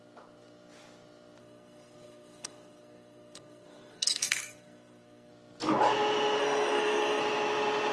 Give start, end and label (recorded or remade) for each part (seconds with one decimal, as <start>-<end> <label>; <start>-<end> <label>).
0.0-1.4 recorded; 1.4-5.3 remade; 5.3-6.4 recorded; 6.4-7.2 remade; 7.2-7.9 recorded